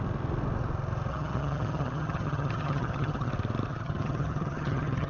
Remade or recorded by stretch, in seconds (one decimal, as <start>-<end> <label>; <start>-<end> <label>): 0.0-1.1 recorded; 1.1-3.3 remade; 3.3-3.7 recorded; 3.7-5.1 remade